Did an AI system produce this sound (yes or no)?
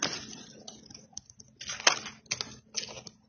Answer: no